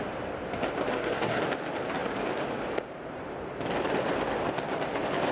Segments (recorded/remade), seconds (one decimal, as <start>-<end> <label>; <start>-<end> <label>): 0.0-0.9 recorded; 0.9-1.4 remade; 1.4-5.3 recorded